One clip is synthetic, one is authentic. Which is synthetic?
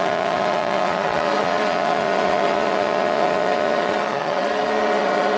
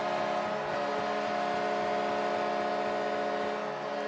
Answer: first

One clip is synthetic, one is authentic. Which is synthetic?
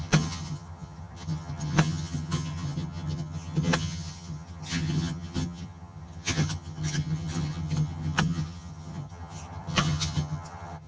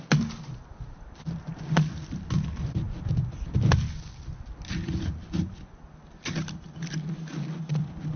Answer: first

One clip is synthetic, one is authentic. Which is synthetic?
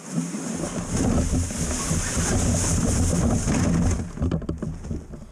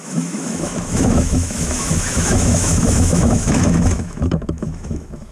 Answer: second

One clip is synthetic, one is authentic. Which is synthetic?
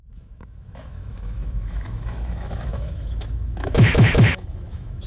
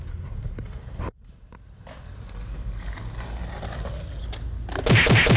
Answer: first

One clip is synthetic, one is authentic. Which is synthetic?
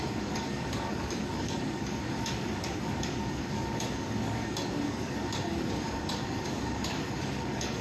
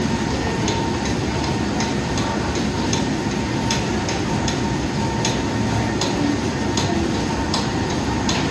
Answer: first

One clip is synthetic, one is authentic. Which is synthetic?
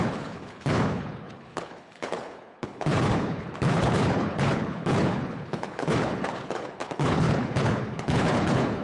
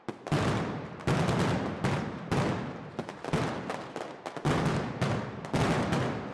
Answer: first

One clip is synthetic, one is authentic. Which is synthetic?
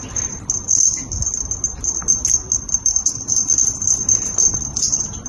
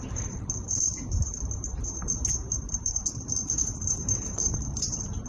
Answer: second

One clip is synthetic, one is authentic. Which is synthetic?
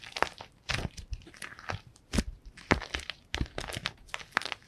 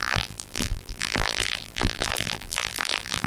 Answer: second